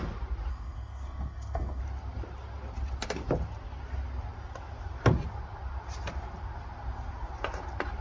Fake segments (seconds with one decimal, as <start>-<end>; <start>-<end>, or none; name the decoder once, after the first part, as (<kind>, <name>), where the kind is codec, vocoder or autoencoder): 0.5-1.8 (codec, SNAC)